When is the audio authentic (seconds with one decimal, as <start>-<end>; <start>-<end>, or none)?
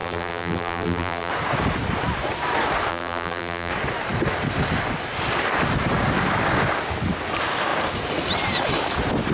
1.3-2.9; 3.7-9.3